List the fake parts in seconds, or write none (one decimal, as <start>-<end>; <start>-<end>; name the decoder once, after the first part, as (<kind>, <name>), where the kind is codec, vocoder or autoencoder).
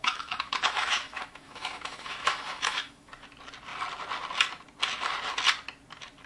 0.0-3.1 (autoencoder, DAC-VAE)